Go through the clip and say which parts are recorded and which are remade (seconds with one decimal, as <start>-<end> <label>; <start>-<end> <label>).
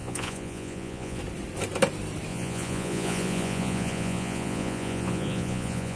0.0-1.2 remade; 1.2-2.3 recorded; 2.3-6.0 remade